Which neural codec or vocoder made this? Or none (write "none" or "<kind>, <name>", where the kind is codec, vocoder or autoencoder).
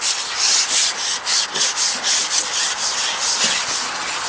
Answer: none